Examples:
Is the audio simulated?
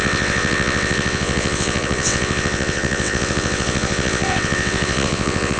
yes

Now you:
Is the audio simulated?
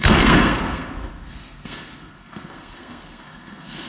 yes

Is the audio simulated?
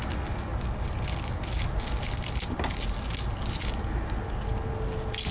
no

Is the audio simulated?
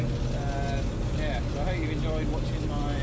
no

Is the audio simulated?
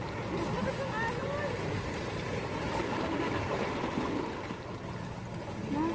no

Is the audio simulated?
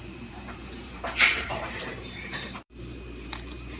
yes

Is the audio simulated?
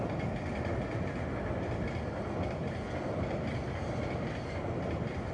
no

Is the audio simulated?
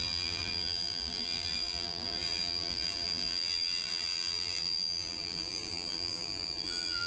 yes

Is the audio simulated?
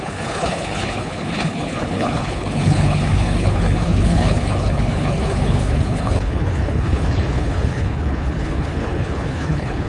yes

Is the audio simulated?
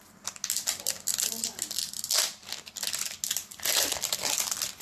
no